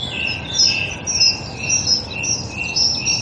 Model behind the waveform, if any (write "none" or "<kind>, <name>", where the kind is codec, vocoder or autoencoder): none